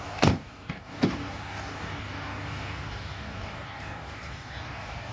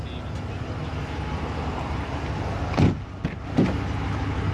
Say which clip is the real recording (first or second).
second